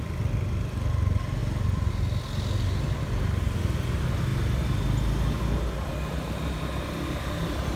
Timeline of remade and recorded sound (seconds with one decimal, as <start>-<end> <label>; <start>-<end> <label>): 0.0-7.8 recorded